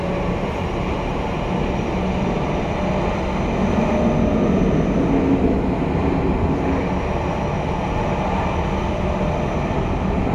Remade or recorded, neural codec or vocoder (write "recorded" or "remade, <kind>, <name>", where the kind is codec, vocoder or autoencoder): recorded